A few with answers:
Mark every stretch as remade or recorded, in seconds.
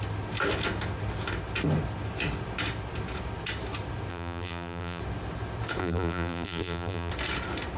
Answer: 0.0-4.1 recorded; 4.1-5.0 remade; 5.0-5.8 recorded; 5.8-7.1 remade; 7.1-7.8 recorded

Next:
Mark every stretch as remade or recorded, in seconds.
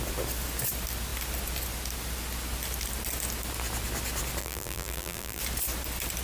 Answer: 0.0-4.4 recorded; 4.4-5.4 remade; 5.4-6.2 recorded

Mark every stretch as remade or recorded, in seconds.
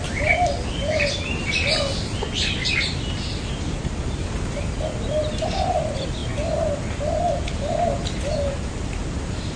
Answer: 0.0-9.6 recorded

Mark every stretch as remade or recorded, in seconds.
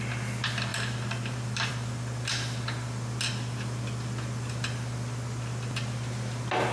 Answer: 0.0-0.7 recorded; 0.7-1.7 remade; 1.7-6.7 recorded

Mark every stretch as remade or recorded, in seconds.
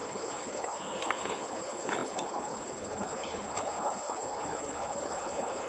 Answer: 0.0-5.7 remade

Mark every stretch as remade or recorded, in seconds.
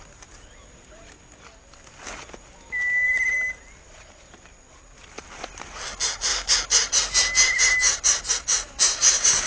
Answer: 0.0-9.5 recorded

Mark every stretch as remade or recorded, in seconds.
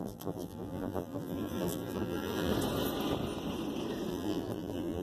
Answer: 0.0-2.5 remade; 2.5-4.1 recorded; 4.1-5.0 remade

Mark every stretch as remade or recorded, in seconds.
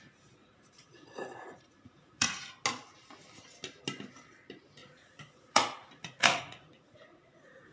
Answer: 0.0-0.4 recorded; 0.4-2.5 remade; 2.5-4.8 recorded; 4.8-7.7 remade